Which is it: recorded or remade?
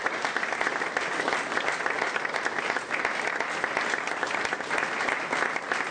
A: recorded